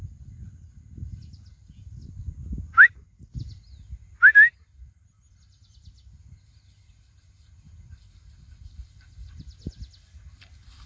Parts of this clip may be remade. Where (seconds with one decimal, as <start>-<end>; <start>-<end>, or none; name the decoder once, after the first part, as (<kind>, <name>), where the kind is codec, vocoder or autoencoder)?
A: none